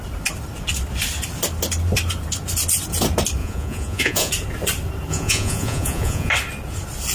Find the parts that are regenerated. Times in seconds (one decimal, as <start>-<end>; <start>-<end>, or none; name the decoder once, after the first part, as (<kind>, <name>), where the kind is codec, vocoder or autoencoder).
3.4-4.3 (vocoder, Vocos); 5.1-6.3